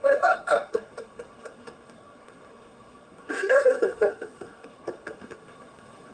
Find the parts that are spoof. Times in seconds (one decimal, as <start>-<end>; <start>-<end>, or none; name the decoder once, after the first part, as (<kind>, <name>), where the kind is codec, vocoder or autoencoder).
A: 0.0-6.1 (codec, SNAC)